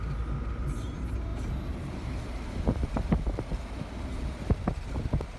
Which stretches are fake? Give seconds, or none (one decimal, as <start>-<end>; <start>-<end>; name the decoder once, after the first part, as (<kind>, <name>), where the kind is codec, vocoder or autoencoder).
1.3-4.5 (vocoder, BigVGAN v2)